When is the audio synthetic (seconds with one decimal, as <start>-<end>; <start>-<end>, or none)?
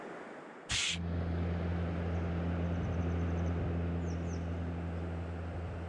none